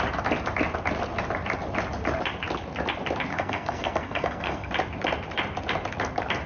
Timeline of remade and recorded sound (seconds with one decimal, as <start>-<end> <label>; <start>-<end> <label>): 0.0-3.3 recorded; 3.3-4.7 remade; 4.7-6.5 recorded